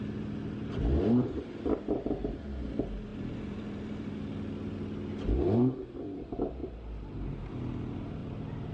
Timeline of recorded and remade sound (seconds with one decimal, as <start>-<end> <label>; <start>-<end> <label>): 0.0-3.1 recorded; 3.1-4.1 remade; 4.1-6.6 recorded; 6.6-7.5 remade; 7.5-8.2 recorded; 8.2-8.7 remade